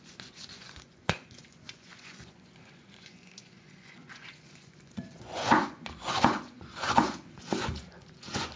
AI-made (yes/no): yes